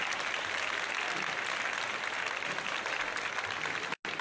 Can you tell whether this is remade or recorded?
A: recorded